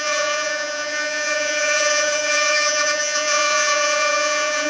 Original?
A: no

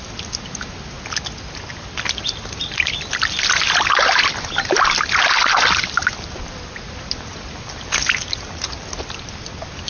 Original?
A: yes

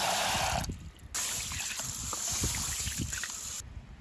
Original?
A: yes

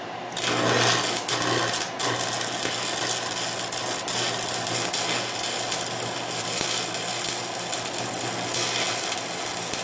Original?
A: yes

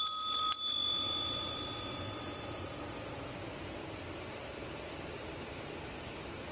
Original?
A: yes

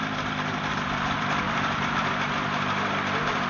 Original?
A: no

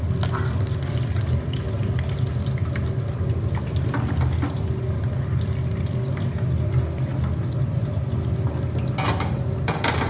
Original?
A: yes